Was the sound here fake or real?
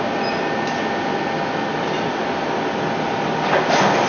real